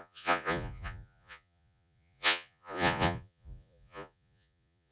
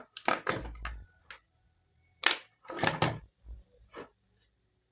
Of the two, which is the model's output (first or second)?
first